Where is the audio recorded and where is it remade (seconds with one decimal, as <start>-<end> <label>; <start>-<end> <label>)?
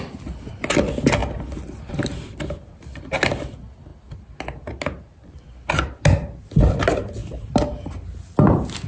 0.0-7.2 recorded; 7.2-7.9 remade; 7.9-8.9 recorded